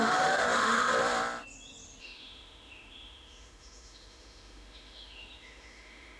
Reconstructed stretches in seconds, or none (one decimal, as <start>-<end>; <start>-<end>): 0.0-0.9; 2.0-6.2